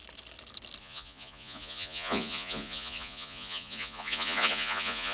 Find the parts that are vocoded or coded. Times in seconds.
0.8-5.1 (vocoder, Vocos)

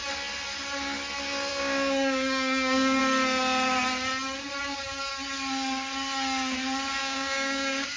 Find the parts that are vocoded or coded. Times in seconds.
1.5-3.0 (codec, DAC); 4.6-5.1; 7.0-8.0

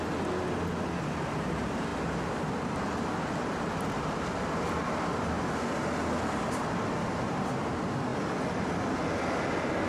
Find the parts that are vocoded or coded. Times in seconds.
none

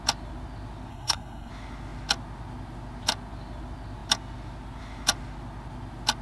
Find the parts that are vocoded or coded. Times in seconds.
0.9-1.5 (codec, SNAC)